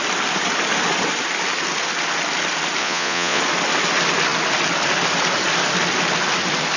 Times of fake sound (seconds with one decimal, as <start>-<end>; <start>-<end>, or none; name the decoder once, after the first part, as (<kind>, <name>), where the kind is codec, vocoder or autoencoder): 2.8-3.4 (vocoder, Vocos)